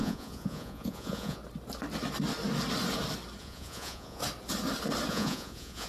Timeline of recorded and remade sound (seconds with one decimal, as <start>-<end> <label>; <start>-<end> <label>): 0.0-1.4 remade; 1.4-3.4 recorded; 3.4-4.2 remade; 4.2-5.1 recorded; 5.1-5.9 remade